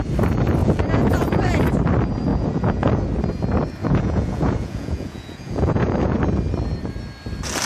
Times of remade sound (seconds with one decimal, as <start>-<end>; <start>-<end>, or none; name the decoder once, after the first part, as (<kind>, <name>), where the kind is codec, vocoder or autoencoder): 0.6-1.5 (vocoder, Vocos); 2.3-2.9; 3.8-6.2